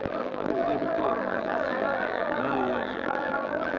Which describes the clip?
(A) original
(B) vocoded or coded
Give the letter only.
B